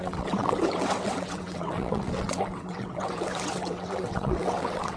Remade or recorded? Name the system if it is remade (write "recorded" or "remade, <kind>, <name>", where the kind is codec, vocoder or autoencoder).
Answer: remade, vocoder, WaveNeXt